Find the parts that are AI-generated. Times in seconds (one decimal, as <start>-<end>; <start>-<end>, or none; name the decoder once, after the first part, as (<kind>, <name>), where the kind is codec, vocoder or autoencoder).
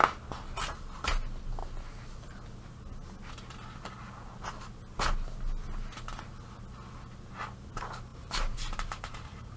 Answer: 8.1-9.6 (vocoder, BigVGAN v2)